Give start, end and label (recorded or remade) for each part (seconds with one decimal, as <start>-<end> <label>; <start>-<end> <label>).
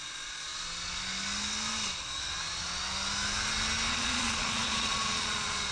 0.0-0.5 remade; 0.5-3.9 recorded; 3.9-5.7 remade